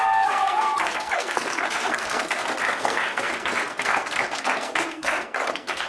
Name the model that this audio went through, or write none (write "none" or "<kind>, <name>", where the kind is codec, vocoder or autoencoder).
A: codec, SNAC